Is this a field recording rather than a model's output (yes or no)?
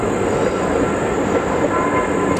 yes